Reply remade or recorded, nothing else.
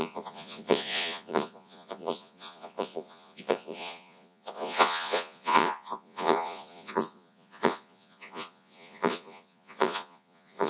remade